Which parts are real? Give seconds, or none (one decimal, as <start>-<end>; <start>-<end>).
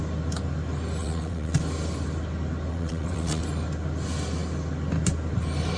0.0-1.0; 1.6-2.7; 3.4-5.8